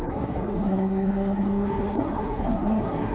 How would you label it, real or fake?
fake